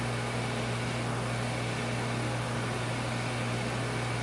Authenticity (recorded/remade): recorded